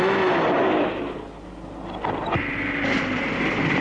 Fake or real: real